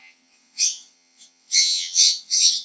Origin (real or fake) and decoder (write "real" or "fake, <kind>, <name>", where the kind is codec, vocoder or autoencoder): fake, vocoder, WaveNeXt